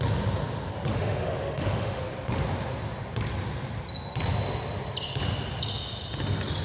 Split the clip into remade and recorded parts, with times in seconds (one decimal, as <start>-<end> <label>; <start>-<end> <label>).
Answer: 0.0-0.9 recorded; 0.9-2.0 remade; 2.0-6.6 recorded